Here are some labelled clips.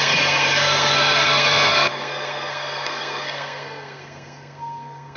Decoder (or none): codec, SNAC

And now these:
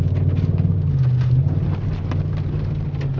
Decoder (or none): none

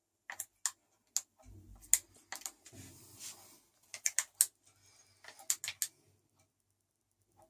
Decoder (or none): none